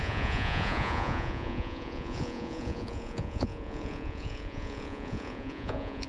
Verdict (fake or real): fake